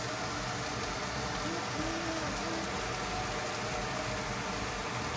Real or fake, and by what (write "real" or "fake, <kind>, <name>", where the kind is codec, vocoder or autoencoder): real